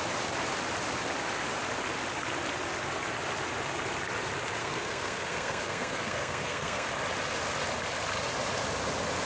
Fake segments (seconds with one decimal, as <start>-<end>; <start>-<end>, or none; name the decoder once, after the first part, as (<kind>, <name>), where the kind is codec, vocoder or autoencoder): 4.6-6.9 (codec, SNAC)